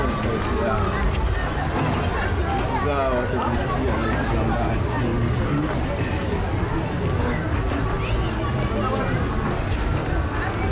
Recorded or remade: recorded